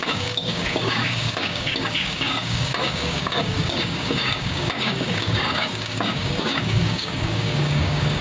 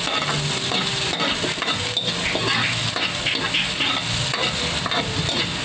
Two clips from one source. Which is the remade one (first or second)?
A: first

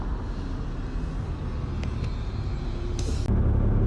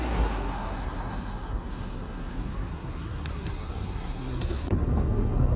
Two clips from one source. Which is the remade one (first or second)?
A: second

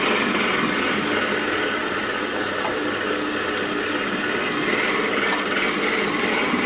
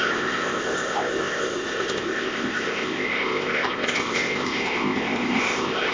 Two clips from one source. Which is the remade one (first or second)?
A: second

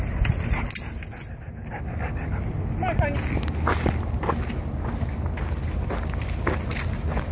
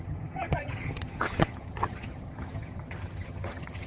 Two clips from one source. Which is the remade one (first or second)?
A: second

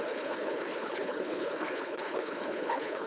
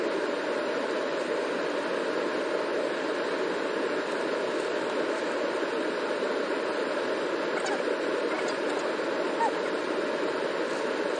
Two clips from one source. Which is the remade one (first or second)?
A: first